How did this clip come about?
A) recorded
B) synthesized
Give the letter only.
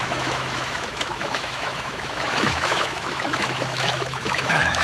B